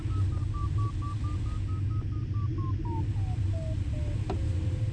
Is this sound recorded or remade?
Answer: recorded